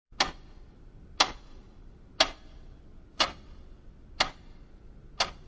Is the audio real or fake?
real